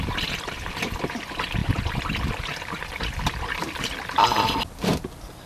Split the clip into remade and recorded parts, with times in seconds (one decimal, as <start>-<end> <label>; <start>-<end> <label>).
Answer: 0.0-5.5 recorded